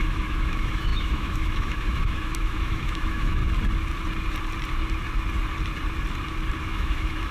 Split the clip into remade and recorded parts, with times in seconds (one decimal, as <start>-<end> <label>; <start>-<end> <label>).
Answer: 0.0-3.4 remade; 3.4-6.6 recorded; 6.6-7.3 remade